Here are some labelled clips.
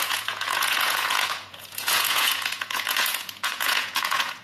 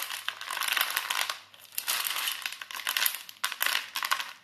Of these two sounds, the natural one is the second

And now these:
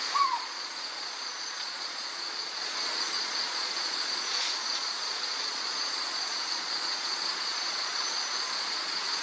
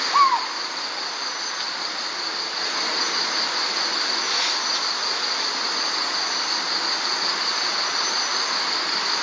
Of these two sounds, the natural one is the second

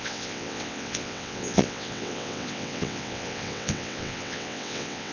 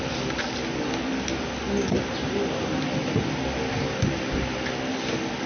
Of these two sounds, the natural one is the second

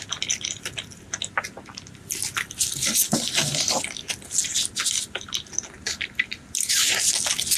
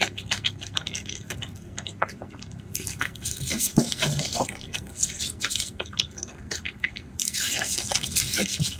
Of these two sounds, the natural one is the first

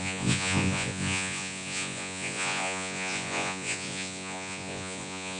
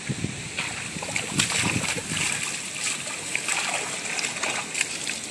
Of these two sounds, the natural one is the second